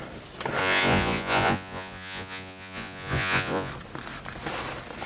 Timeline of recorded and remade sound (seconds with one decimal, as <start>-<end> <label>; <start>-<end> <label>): 0.0-0.6 recorded; 0.6-3.7 remade; 3.7-5.1 recorded